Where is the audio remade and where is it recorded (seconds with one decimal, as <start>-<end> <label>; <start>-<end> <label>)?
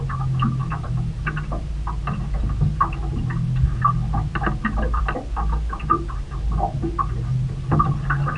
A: 0.0-8.4 recorded